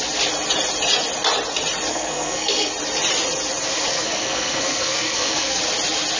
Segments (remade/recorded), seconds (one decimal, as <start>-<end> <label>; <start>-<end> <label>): 0.0-1.9 recorded; 1.9-2.7 remade; 2.7-3.9 recorded; 3.9-5.6 remade; 5.6-6.2 recorded